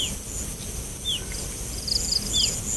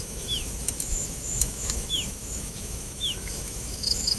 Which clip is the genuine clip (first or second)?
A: first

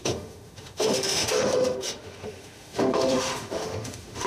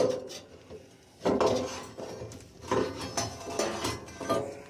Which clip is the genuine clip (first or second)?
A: second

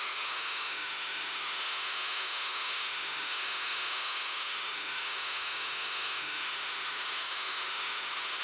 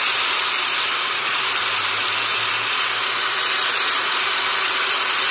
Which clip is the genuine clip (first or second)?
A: second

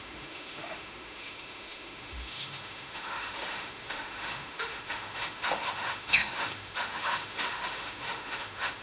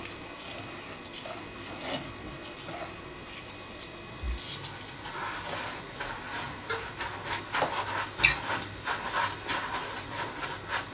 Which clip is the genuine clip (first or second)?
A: second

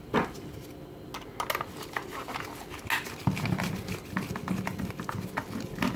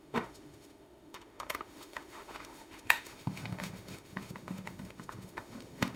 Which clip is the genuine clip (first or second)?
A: first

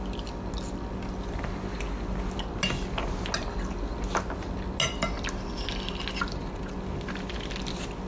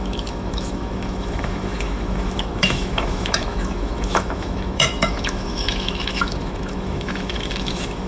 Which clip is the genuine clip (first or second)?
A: first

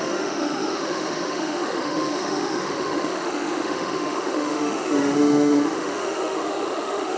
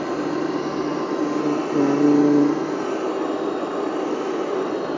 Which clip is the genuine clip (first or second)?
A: second